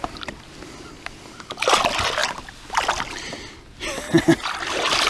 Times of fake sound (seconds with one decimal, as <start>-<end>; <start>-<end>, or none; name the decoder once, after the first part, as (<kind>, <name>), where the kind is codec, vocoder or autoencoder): none